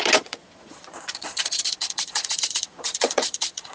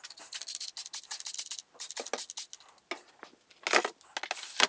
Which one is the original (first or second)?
second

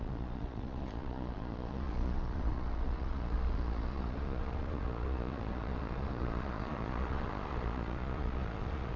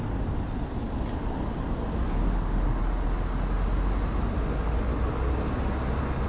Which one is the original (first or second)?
second